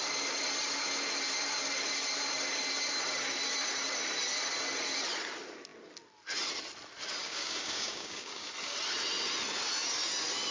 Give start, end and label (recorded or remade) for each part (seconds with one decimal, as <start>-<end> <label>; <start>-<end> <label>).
0.0-7.2 recorded; 7.2-8.5 remade; 8.5-10.5 recorded